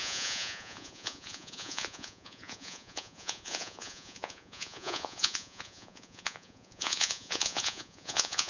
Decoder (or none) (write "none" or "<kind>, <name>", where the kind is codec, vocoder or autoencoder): vocoder, Vocos